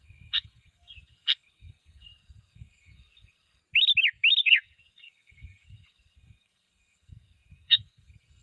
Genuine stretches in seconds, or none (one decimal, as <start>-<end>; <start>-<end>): 3.6-4.4